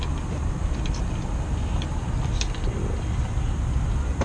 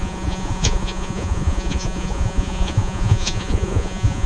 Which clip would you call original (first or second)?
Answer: first